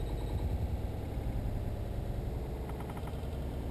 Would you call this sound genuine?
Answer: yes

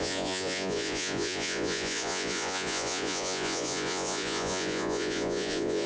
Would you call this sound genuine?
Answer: no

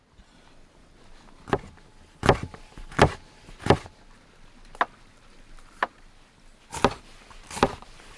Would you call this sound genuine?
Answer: yes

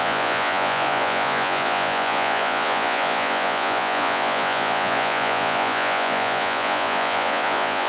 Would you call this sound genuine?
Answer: no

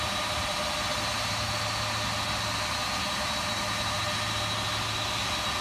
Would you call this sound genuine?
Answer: yes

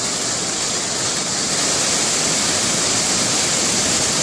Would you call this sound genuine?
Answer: yes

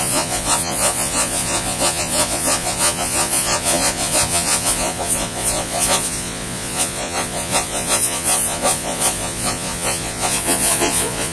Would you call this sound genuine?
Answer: no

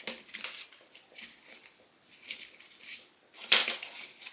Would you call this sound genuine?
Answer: yes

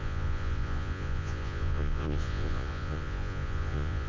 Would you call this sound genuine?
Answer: no